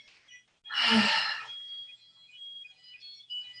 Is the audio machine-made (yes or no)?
no